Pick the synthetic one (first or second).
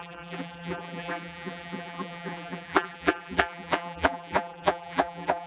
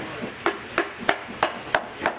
first